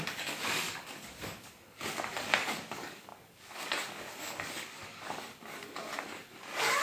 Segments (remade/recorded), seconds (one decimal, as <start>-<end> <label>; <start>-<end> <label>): 0.0-6.8 remade